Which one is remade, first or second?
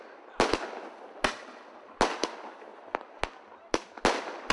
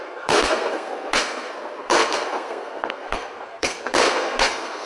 second